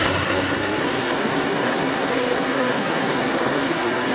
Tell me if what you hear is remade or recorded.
remade